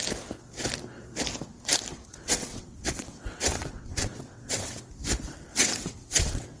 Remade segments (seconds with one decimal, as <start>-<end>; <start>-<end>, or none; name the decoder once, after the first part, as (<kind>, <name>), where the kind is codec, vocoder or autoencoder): 1.9-4.9 (vocoder, WaveNeXt); 5.5-6.6

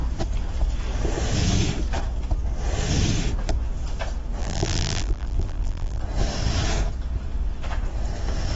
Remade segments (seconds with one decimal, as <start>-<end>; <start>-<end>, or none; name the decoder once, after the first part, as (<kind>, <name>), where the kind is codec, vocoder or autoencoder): 4.4-6.0 (vocoder, BigVGAN v2)

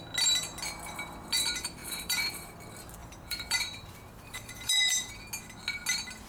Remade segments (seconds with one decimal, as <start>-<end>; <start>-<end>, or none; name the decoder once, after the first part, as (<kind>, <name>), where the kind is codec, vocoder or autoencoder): 1.8-2.6 (vocoder, BigVGAN v2); 3.0-5.1

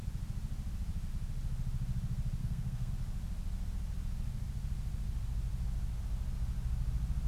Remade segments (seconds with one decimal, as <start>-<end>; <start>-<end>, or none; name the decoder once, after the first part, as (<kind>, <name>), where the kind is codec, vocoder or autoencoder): 2.4-2.9 (codec, SNAC)

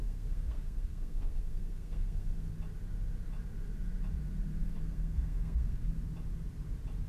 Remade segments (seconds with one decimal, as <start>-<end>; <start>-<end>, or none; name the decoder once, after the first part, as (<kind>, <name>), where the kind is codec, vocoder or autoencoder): 0.0-2.5 (codec, SNAC); 4.6-5.9